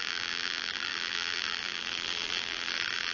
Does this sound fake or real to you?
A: fake